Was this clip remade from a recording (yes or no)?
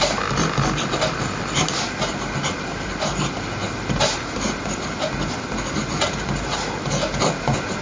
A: no